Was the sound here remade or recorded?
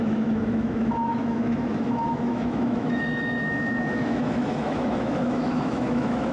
remade